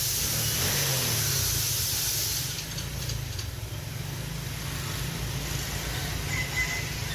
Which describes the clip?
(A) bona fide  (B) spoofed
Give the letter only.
A